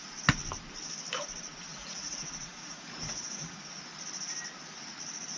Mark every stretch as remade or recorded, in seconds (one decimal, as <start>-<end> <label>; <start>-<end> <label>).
0.0-1.8 recorded; 1.8-3.6 remade; 3.6-5.4 recorded